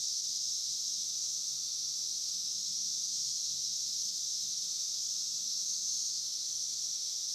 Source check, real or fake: fake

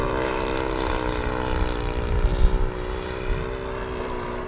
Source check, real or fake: real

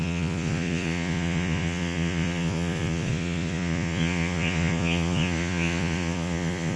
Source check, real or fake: fake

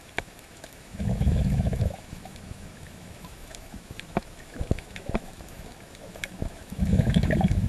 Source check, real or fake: fake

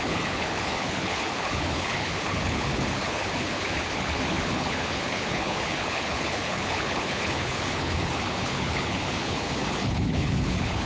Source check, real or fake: fake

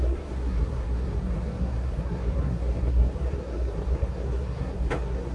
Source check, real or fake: fake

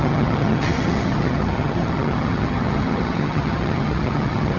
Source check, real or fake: fake